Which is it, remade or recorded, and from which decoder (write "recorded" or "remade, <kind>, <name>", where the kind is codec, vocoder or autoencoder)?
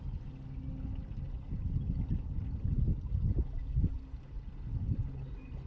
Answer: recorded